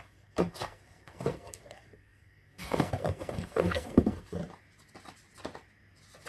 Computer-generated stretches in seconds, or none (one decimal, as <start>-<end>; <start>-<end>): 0.0-4.4